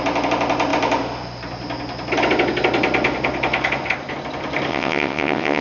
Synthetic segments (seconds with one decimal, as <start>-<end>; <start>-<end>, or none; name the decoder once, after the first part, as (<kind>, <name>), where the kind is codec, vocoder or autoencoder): 4.7-5.6 (vocoder, WaveNeXt)